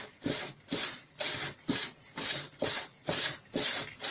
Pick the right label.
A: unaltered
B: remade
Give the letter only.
A